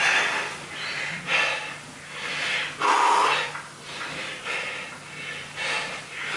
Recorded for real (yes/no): yes